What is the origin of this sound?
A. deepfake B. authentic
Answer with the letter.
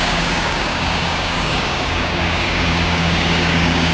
A